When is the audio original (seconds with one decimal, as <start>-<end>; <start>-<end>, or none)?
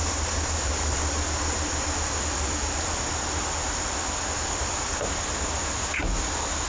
0.7-4.7; 6.0-6.7